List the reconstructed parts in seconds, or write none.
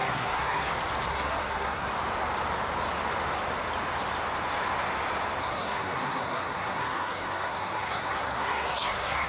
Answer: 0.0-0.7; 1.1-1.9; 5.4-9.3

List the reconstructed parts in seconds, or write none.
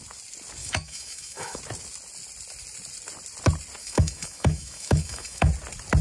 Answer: 0.6-1.6; 3.8-5.5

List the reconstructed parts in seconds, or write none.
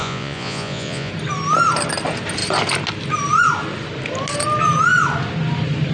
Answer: 0.0-1.1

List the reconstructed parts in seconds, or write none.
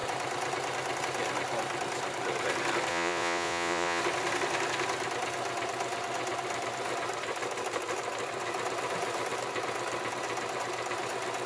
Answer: 2.9-4.0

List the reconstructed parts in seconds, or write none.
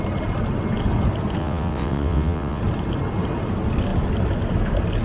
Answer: 1.4-2.6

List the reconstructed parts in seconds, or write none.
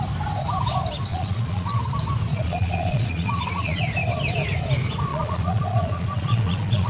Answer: 1.1-1.8; 2.3-3.8; 5.1-6.9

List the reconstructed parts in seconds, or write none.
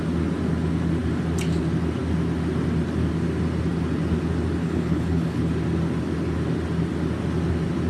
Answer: 4.6-5.5